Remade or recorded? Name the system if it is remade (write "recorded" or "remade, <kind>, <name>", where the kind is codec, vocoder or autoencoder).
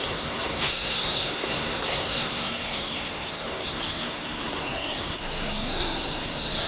remade, codec, SNAC